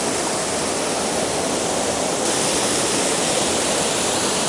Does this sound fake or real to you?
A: real